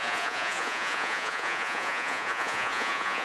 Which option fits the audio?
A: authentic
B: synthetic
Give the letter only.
B